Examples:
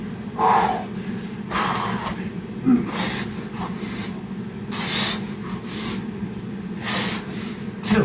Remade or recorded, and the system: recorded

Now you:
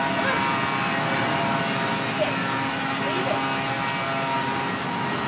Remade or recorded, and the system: recorded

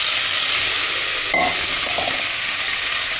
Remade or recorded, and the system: recorded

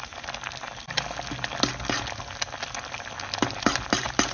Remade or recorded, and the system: recorded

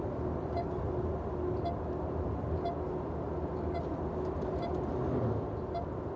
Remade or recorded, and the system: recorded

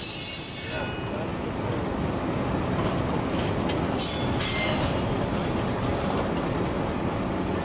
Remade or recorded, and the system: recorded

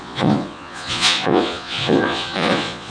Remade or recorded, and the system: remade, vocoder, Vocos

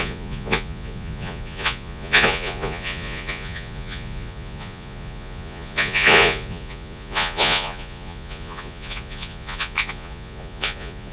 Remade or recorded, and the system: remade, vocoder, Vocos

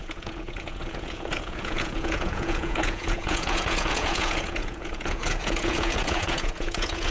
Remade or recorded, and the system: remade, vocoder, Vocos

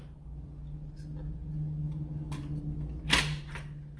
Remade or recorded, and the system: recorded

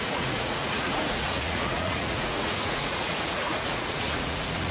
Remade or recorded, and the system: remade, vocoder, Vocos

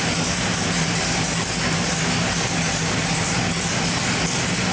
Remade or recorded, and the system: recorded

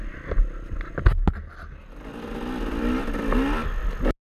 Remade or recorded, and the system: recorded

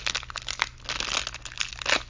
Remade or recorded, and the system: recorded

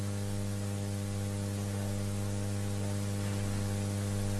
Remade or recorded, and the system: recorded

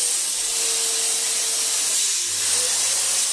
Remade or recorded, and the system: recorded